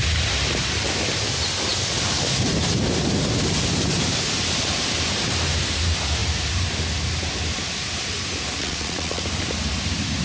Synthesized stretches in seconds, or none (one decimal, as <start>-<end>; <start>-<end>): 8.6-9.2